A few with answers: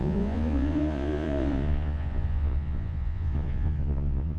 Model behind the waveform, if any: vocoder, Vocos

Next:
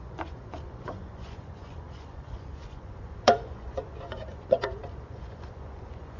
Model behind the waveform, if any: vocoder, Vocos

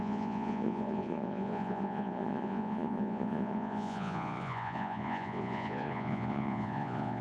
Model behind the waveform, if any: vocoder, Vocos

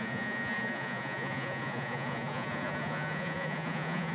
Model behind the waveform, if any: vocoder, Vocos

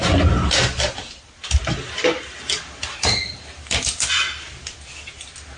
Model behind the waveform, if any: none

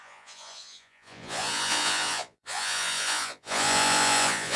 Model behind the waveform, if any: vocoder, Vocos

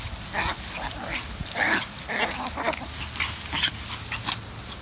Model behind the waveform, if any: none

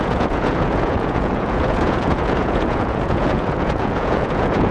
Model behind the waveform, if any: vocoder, Vocos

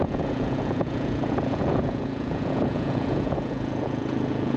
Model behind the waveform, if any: vocoder, Vocos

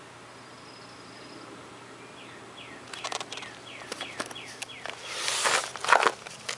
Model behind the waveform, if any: none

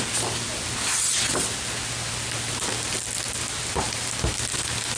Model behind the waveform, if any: none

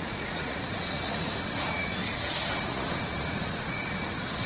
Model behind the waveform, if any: vocoder, Vocos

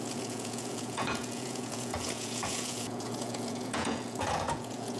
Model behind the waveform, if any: vocoder, Vocos